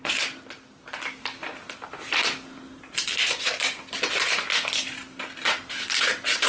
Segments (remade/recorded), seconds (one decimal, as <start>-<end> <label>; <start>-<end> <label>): 0.0-6.5 recorded

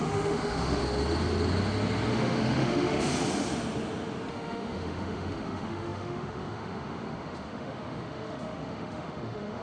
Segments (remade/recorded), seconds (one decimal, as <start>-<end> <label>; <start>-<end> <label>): 0.0-0.8 remade; 0.8-2.1 recorded; 2.1-3.1 remade; 3.1-4.3 recorded; 4.3-9.6 remade

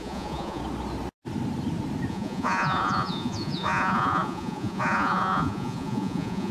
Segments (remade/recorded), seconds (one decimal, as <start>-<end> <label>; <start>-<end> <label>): 0.0-0.6 remade; 0.6-2.1 recorded; 2.1-6.5 remade

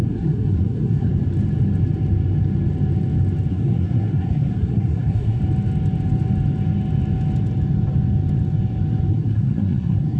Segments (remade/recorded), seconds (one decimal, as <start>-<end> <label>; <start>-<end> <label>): 0.0-1.1 remade; 1.1-3.5 recorded; 3.5-5.4 remade; 5.4-9.1 recorded; 9.1-10.2 remade

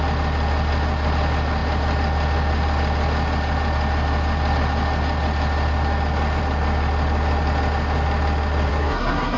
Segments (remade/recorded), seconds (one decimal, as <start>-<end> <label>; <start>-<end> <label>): 0.0-8.7 recorded; 8.7-9.4 remade